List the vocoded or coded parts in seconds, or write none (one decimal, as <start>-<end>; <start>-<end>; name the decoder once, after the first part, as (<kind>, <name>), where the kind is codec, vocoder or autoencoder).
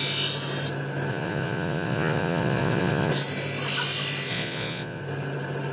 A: 1.1-3.1 (vocoder, Vocos); 4.3-5.0